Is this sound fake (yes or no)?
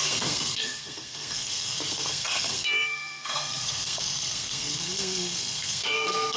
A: yes